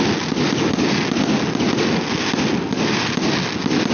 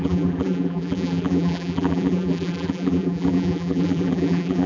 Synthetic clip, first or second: second